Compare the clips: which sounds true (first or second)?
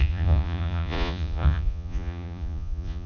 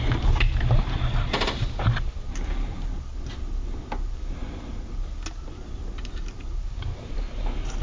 second